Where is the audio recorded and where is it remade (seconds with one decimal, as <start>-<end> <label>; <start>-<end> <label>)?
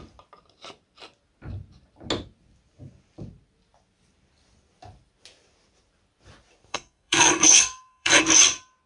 0.0-6.7 recorded; 6.7-8.2 remade; 8.2-8.9 recorded